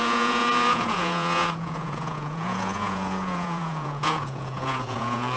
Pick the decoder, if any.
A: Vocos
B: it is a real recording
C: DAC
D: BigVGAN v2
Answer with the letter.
A